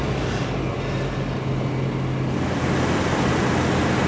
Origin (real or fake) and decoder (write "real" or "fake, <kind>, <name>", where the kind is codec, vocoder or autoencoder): real